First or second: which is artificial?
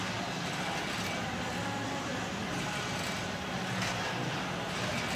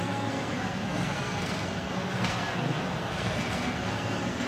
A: second